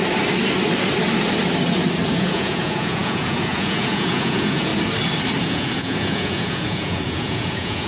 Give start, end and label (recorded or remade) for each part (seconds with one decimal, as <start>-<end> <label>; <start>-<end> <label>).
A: 0.0-2.1 recorded; 2.1-4.7 remade; 4.7-5.4 recorded; 5.4-7.9 remade